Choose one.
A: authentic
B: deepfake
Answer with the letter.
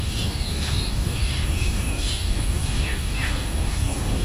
B